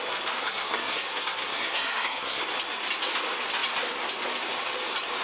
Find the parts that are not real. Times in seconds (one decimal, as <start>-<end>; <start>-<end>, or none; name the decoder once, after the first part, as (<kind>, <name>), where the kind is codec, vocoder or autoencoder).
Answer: 0.4-2.4 (codec, SNAC)